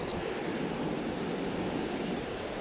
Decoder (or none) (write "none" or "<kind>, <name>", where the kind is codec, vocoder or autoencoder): none